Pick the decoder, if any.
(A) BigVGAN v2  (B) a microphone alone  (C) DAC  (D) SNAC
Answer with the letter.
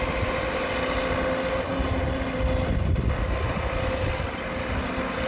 B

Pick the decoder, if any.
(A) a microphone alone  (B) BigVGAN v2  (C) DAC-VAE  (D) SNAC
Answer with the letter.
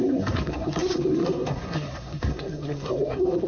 D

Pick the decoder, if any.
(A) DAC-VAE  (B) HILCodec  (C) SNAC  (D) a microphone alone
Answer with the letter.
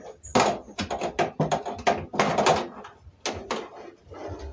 D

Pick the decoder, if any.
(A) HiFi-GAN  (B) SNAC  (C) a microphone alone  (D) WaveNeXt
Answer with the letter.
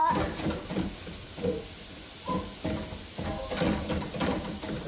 C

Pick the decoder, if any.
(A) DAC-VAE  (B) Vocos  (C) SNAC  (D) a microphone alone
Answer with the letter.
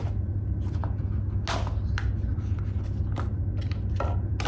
D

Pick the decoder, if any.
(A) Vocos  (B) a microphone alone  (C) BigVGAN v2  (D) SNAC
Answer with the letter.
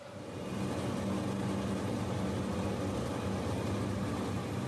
B